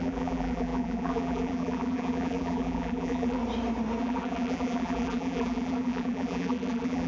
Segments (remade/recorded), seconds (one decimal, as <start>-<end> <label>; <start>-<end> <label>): 0.0-3.4 remade; 3.4-4.0 recorded; 4.0-7.1 remade